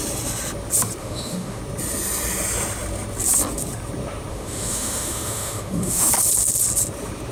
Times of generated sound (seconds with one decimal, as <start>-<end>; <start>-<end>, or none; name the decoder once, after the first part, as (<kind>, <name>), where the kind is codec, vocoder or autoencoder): 1.0-1.6 (autoencoder, DAC-VAE); 4.3-6.1